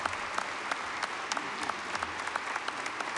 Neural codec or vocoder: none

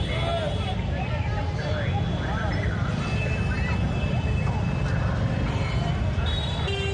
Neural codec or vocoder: none